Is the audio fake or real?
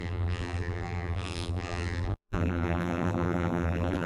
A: fake